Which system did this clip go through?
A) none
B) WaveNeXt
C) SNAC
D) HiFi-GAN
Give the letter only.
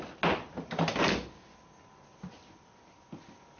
A